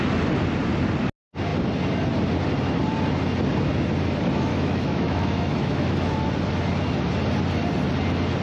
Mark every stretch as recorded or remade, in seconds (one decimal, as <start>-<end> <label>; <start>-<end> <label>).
0.0-4.5 recorded; 4.5-6.2 remade; 6.2-8.4 recorded